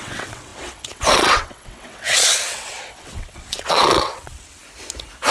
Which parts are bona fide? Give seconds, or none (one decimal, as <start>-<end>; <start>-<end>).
4.6-5.3